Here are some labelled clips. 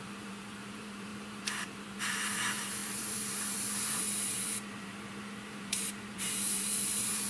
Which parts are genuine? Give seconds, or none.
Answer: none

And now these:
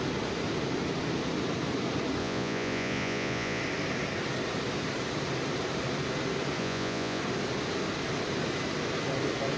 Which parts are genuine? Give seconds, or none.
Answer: 0.0-2.2; 3.6-6.6; 7.2-9.6

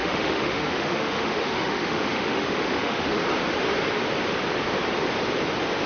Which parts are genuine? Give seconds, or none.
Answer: 3.2-5.9

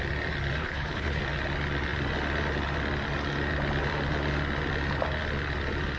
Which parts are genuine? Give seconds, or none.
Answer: 0.0-0.6; 1.2-6.0

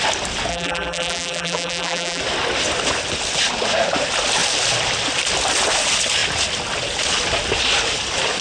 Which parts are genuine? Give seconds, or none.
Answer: 0.0-0.5; 2.2-8.4

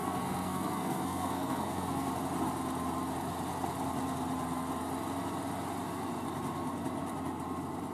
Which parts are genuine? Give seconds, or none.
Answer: 2.1-7.9